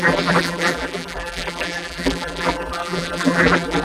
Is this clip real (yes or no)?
no